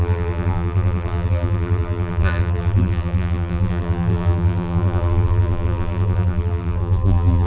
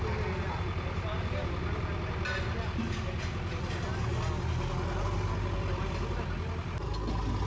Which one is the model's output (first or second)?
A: first